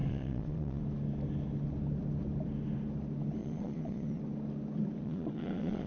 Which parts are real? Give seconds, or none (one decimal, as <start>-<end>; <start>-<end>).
0.8-3.4; 4.2-5.0